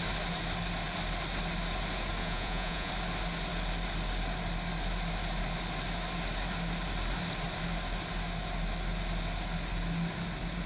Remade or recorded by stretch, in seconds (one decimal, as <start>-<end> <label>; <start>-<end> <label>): 0.0-2.2 recorded; 2.2-2.9 remade; 2.9-10.7 recorded